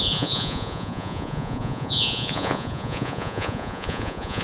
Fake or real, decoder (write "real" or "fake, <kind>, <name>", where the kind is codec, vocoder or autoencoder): fake, vocoder, Vocos